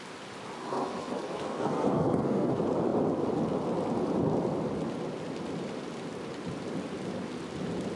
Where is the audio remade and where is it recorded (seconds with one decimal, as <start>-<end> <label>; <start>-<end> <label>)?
0.0-0.6 recorded; 0.6-2.5 remade; 2.5-8.0 recorded